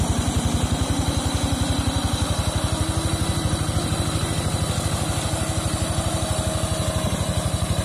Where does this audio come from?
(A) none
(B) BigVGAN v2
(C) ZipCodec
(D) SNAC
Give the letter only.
A